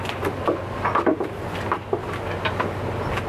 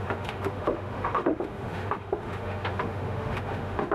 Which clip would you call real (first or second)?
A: first